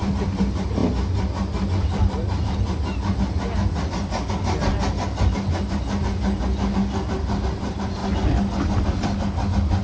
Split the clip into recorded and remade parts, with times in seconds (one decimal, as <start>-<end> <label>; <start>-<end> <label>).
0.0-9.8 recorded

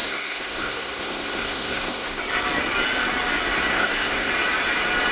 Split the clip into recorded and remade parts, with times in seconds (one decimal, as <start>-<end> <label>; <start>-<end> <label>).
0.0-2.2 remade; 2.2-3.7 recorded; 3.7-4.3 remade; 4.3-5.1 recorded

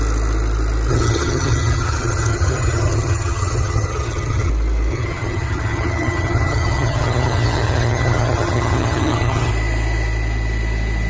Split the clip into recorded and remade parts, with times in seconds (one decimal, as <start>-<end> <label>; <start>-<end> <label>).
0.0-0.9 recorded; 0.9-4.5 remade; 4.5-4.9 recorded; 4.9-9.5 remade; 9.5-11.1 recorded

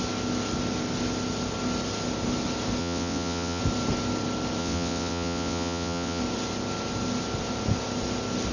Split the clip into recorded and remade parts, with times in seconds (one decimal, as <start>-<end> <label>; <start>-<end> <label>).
0.0-2.8 recorded; 2.8-3.6 remade; 3.6-4.6 recorded; 4.6-6.2 remade; 6.2-8.5 recorded

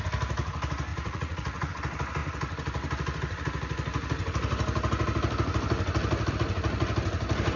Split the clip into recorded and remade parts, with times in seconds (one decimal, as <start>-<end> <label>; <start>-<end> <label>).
0.0-0.9 recorded; 0.9-1.7 remade; 1.7-7.6 recorded

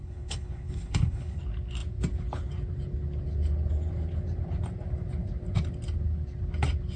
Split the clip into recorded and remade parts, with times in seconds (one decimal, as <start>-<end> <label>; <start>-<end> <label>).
0.0-1.4 remade; 1.4-7.0 recorded

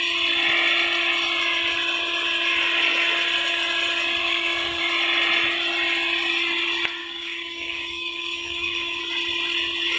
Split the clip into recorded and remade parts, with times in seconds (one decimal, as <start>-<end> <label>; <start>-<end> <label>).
0.0-4.2 recorded; 4.2-4.8 remade; 4.8-7.0 recorded; 7.0-9.0 remade; 9.0-10.0 recorded

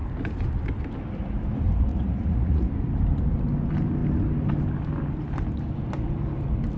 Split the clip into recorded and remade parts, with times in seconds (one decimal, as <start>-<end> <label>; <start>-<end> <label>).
0.0-1.9 recorded; 1.9-2.7 remade; 2.7-6.8 recorded